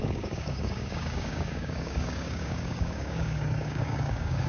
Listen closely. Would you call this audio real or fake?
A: fake